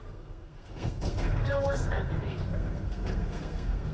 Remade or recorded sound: remade